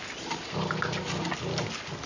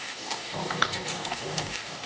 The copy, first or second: second